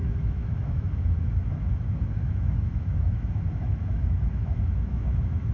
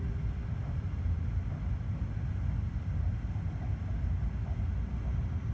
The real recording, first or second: second